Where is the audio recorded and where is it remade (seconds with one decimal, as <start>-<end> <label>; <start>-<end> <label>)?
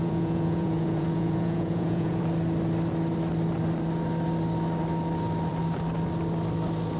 0.0-2.2 remade; 2.2-7.0 recorded